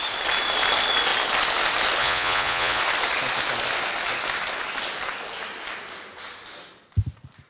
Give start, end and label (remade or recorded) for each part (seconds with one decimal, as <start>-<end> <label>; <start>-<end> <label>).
0.0-2.0 recorded; 2.0-2.8 remade; 2.8-7.5 recorded